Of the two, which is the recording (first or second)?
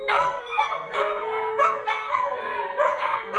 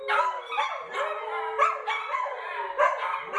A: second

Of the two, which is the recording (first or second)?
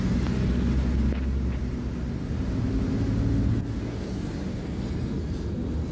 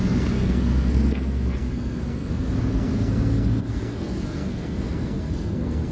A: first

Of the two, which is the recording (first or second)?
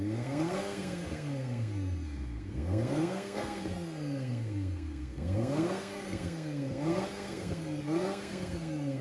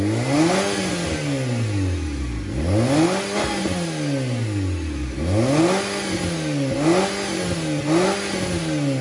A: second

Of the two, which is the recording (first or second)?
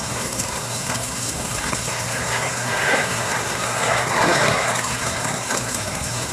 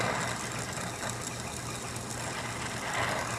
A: second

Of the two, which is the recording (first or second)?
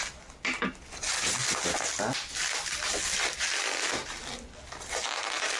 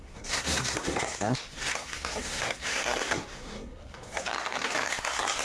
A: first